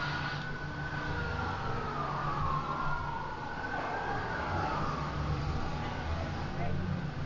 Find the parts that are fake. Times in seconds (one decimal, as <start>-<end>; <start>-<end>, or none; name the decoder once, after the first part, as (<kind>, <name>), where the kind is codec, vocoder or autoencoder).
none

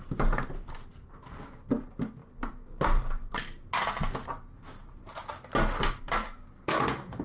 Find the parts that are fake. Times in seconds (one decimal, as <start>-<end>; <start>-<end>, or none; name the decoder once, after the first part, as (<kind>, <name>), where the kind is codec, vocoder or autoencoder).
none

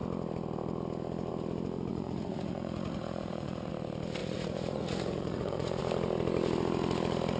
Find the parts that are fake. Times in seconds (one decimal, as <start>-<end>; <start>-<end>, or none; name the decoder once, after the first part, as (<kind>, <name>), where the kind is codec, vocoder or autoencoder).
1.9-3.7 (vocoder, Vocos); 4.2-5.8

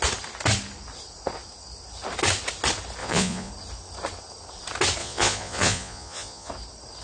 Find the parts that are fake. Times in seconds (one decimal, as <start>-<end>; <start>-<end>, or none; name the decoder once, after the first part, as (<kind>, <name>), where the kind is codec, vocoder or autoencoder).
3.0-3.5 (vocoder, Vocos); 5.0-6.5